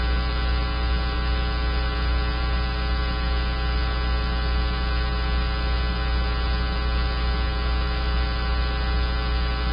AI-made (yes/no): no